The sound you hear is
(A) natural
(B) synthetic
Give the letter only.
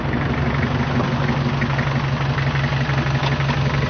A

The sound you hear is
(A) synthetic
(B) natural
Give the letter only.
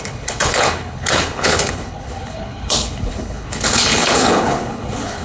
A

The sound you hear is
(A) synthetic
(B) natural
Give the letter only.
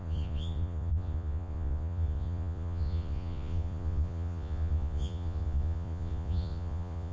A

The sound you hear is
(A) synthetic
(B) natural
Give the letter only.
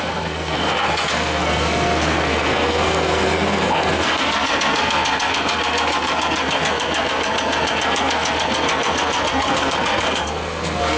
A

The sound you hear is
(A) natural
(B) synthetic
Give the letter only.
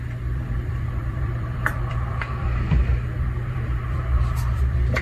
B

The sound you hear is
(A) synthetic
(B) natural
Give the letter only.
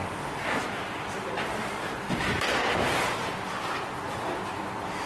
B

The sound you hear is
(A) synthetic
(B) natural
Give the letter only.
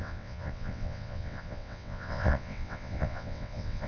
A